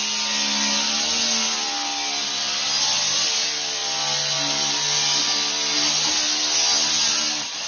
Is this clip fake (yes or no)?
no